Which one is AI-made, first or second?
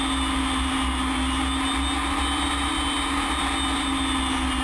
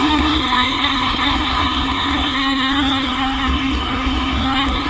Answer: second